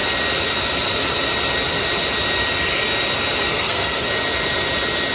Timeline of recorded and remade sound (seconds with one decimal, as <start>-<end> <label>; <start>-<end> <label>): 0.0-3.5 recorded; 3.5-4.1 remade; 4.1-5.1 recorded